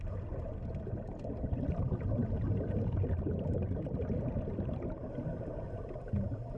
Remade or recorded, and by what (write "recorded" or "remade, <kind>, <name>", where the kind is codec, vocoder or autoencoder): recorded